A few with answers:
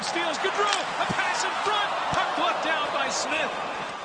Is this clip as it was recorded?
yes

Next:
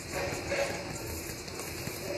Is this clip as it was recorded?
yes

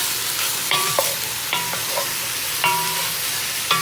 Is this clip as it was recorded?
no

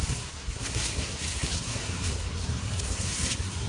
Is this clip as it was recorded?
no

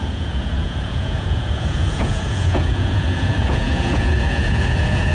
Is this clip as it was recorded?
no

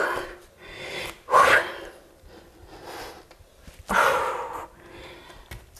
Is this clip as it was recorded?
yes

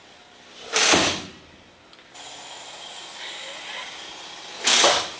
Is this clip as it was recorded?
yes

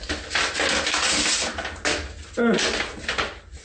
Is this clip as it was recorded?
yes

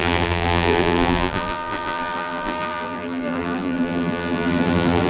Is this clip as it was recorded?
no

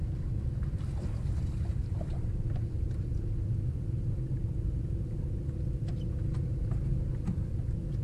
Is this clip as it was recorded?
yes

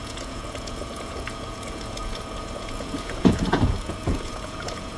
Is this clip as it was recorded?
no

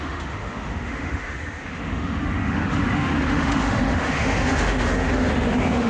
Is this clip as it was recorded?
no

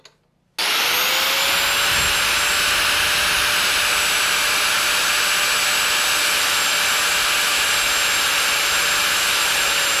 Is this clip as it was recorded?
yes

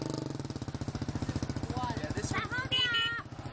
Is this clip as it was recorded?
yes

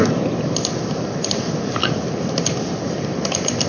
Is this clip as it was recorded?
yes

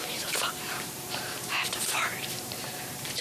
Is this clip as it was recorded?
no